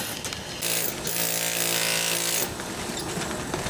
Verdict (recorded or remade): recorded